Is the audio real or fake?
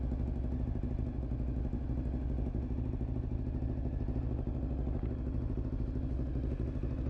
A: real